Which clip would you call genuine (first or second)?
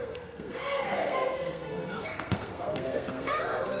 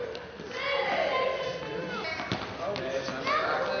second